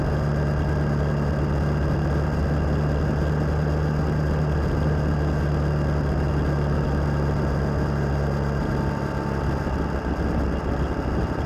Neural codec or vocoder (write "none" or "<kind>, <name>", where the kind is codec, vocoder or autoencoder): none